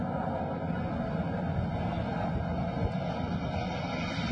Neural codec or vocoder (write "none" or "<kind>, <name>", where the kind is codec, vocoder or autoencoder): none